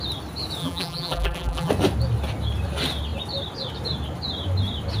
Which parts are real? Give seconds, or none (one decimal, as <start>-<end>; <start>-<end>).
0.0-0.6; 1.7-5.0